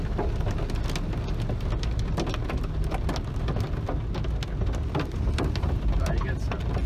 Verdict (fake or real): real